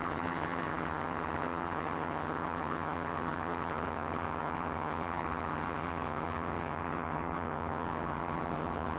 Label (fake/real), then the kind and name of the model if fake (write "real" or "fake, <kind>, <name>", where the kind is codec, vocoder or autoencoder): fake, vocoder, HiFi-GAN